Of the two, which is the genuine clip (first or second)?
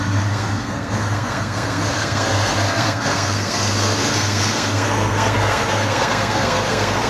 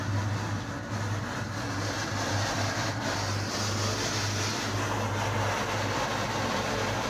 second